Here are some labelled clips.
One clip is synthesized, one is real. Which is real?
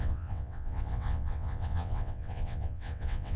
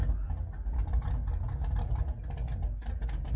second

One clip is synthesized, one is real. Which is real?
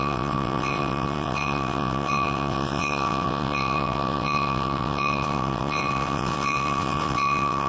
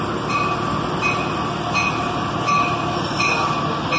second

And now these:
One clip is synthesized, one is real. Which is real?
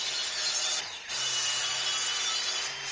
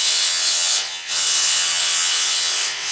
first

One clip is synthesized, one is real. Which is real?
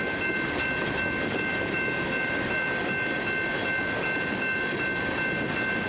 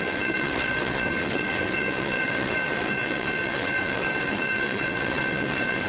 first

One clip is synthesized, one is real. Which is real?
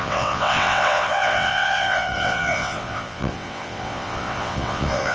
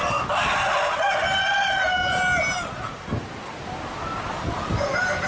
second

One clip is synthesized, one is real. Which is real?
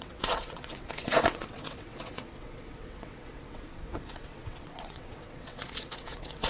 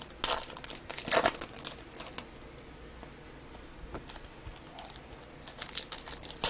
second